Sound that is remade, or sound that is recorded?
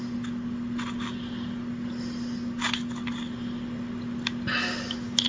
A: recorded